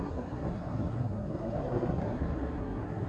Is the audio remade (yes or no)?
yes